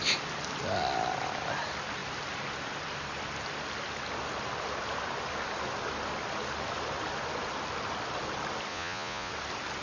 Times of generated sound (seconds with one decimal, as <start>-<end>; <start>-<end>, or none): 8.7-9.3

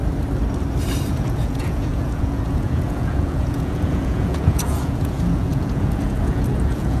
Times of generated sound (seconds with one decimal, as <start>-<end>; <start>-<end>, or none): 1.1-7.0

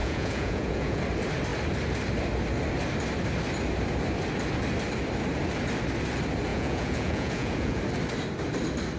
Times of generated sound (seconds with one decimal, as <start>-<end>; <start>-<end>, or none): 0.0-1.0; 6.5-7.8

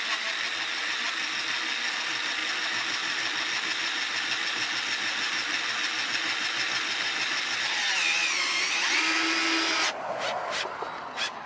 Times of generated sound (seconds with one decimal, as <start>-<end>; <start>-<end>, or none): none